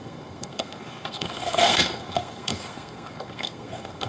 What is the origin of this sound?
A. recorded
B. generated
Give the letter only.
B